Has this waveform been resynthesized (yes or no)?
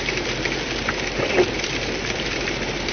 yes